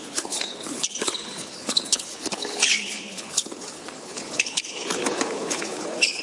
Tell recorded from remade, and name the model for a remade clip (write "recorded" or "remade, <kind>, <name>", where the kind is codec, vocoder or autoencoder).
remade, codec, HILCodec